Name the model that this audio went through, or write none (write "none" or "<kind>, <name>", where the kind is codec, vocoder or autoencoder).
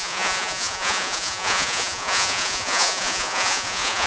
vocoder, Vocos